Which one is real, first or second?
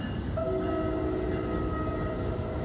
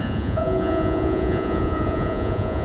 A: first